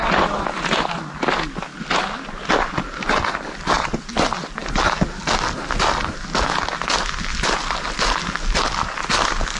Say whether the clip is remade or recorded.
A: recorded